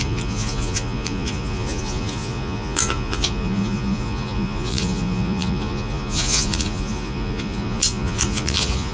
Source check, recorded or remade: remade